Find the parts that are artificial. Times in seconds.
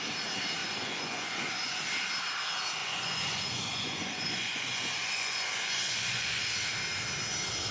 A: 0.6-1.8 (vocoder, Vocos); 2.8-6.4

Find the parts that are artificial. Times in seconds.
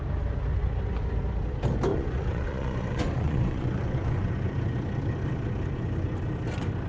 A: 1.9-4.3 (vocoder, Vocos)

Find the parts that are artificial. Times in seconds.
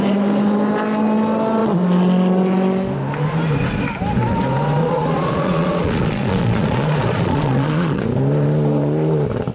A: 4.8-8.0 (vocoder, Vocos)